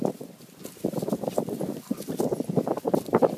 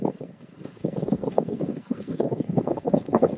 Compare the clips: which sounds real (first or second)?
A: first